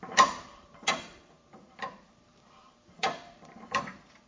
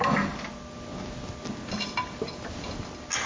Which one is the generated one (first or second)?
first